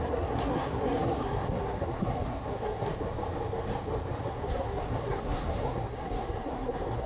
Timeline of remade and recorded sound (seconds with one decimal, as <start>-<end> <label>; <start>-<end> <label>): 0.0-2.9 remade; 2.9-4.2 recorded; 4.2-7.1 remade